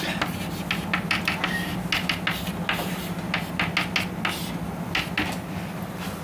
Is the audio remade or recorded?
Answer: recorded